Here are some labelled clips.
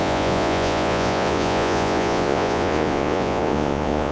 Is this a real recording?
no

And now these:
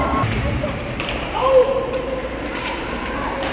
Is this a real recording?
no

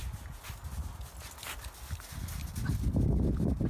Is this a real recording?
yes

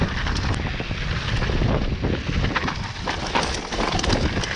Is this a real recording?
yes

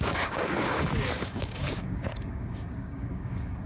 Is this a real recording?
no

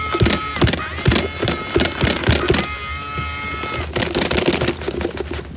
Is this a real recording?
yes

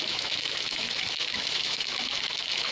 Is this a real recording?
no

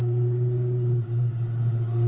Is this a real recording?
yes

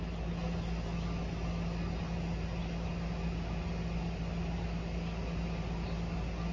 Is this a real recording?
yes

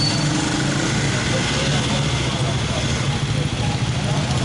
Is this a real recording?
yes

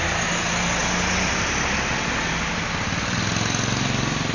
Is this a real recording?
yes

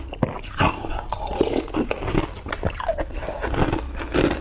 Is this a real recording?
yes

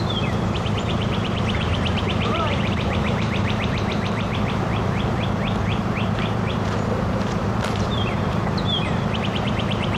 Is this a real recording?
no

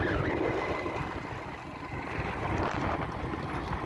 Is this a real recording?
yes